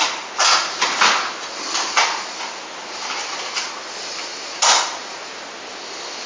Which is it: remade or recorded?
recorded